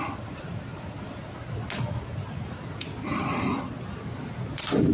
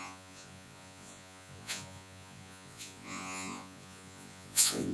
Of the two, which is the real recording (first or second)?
first